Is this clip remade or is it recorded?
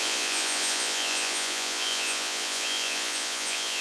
remade